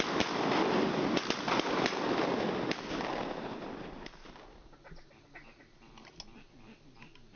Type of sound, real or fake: real